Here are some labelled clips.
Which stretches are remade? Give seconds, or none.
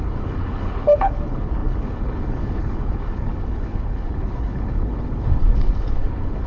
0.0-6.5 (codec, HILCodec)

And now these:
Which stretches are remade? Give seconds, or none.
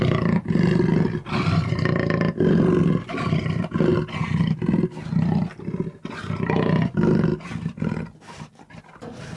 none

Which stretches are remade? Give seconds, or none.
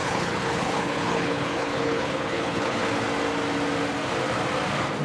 0.0-3.0 (codec, HILCodec)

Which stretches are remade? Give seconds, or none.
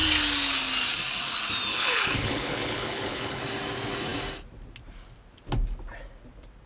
1.7-3.4 (codec, HILCodec)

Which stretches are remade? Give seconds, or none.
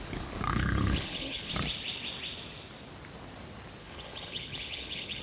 0.5-1.5 (codec, HILCodec); 3.8-5.2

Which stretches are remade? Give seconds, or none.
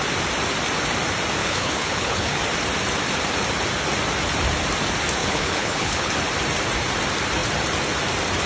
1.4-2.4 (codec, HILCodec); 5.2-6.1